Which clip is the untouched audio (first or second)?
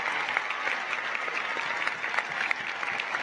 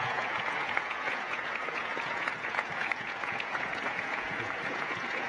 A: first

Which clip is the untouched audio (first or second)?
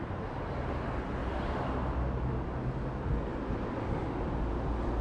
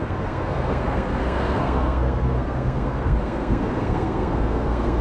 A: first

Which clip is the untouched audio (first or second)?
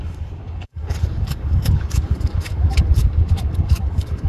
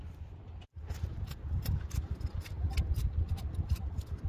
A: second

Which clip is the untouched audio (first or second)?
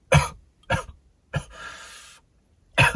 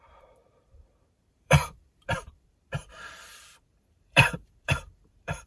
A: first